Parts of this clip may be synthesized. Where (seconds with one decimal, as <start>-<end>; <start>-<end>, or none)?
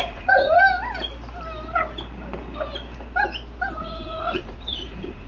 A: 0.0-0.6; 3.8-5.3